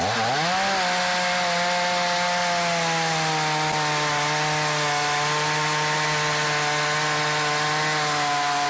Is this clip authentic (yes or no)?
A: yes